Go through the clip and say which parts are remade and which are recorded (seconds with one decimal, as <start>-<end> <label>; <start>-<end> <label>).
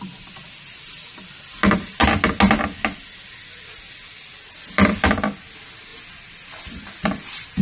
0.0-7.6 recorded